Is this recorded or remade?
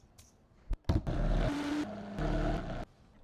recorded